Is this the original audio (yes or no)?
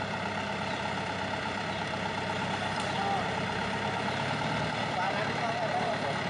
no